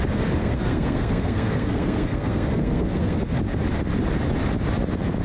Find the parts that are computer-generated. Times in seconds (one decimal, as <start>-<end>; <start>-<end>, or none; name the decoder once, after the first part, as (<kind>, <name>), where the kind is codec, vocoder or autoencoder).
0.4-3.2 (codec, SNAC)